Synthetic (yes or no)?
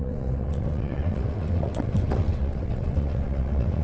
yes